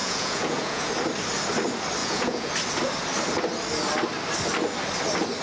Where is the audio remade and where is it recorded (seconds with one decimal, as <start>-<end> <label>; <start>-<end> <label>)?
0.0-0.9 remade; 0.9-2.0 recorded; 2.0-2.5 remade; 2.5-5.4 recorded